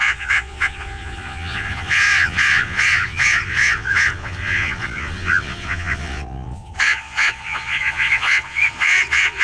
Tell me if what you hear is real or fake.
fake